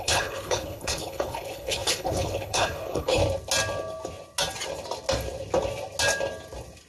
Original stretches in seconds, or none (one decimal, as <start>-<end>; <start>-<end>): 3.2-6.9